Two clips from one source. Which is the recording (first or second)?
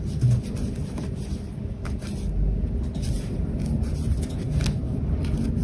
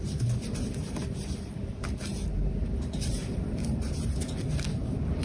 first